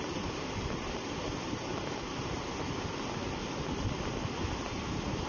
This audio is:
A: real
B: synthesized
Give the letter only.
A